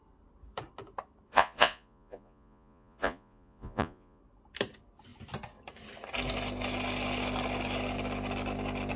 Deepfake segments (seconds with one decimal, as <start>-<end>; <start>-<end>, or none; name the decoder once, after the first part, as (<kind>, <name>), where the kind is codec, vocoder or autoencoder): 1.3-4.2 (vocoder, Vocos)